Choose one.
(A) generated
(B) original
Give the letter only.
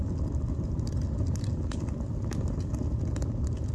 B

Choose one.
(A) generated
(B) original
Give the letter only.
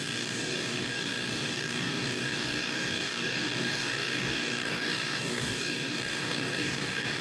A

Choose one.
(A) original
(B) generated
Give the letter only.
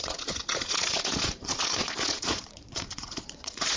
B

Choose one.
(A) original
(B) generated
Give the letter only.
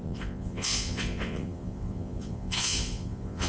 B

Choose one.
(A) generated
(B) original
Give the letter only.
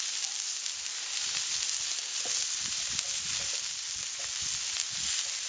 B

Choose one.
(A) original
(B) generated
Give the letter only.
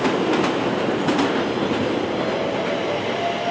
A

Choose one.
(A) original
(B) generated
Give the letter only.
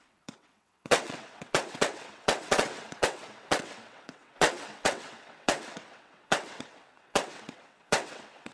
B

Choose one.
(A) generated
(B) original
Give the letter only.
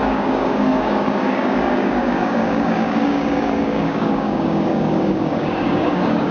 A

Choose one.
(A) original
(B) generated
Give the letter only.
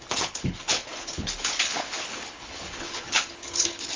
B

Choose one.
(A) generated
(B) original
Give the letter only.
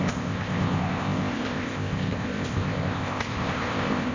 A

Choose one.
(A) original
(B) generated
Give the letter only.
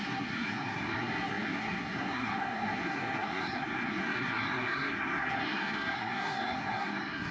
B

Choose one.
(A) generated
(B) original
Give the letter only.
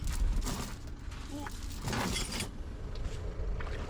B